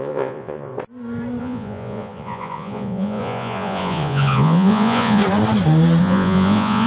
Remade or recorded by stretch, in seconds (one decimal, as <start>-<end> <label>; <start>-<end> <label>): 0.0-0.7 remade; 0.7-1.4 recorded; 1.4-5.2 remade; 5.2-6.0 recorded; 6.0-6.9 remade